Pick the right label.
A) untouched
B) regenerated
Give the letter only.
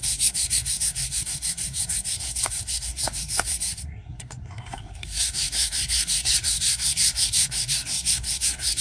B